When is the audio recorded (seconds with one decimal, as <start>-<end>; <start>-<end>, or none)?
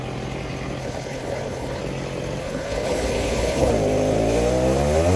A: 0.0-0.8; 1.8-2.4; 3.7-5.2